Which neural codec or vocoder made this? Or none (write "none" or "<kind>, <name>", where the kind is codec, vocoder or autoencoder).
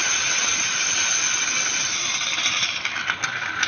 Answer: none